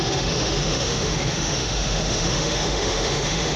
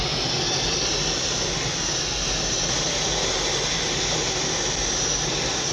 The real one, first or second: second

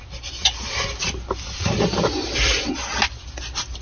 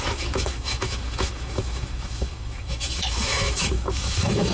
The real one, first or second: first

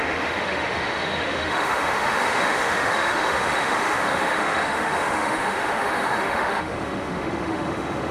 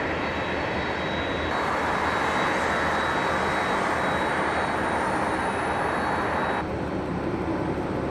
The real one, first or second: second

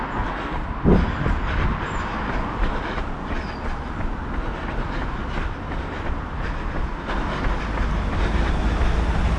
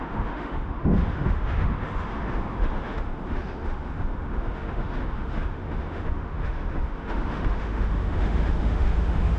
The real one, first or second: first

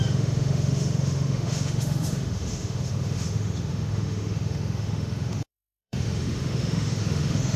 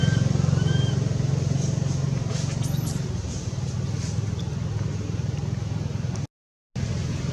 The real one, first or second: second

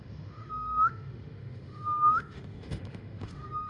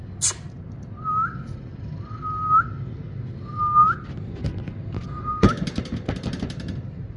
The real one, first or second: second